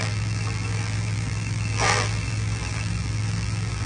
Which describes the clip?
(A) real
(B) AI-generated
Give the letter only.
B